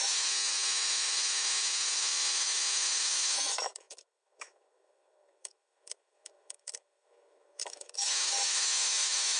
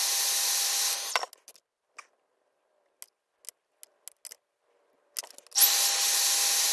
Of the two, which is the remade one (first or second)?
first